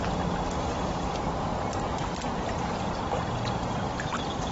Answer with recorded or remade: recorded